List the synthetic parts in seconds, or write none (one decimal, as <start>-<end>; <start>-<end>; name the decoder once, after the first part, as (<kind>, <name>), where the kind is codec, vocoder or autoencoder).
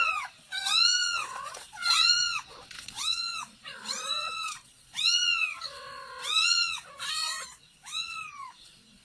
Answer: 0.0-9.0 (vocoder, Vocos)